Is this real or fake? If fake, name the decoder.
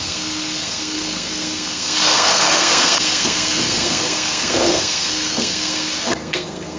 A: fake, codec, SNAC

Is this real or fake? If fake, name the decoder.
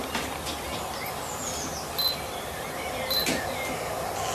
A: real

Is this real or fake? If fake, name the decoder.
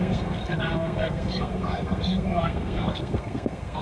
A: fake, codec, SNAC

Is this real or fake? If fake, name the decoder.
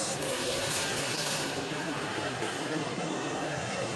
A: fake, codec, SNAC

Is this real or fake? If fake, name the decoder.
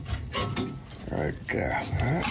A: real